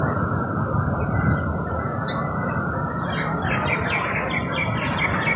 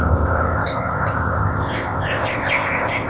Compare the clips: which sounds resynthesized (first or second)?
second